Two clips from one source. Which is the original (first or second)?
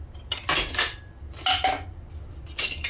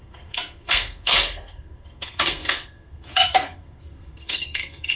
first